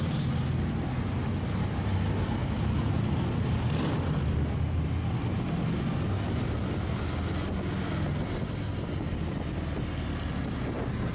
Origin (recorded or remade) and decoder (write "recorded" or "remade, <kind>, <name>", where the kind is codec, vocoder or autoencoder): recorded